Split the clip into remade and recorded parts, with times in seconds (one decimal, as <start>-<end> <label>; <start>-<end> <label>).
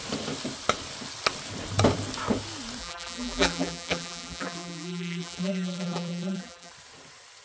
0.0-2.8 recorded; 2.8-6.7 remade; 6.7-7.4 recorded